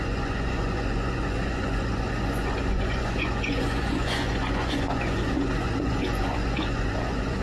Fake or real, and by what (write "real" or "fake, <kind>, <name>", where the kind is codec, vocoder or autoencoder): fake, vocoder, Vocos